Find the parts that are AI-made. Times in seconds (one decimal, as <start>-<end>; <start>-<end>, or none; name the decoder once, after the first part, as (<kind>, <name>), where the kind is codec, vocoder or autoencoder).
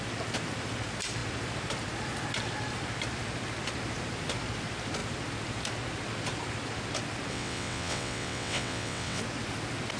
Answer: 7.3-9.2 (vocoder, WaveNeXt)